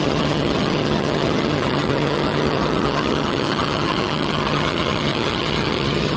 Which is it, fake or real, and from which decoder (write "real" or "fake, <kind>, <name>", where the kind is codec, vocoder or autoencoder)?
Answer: fake, vocoder, HiFi-GAN